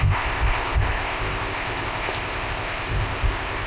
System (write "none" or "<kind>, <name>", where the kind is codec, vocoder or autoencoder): codec, ZipCodec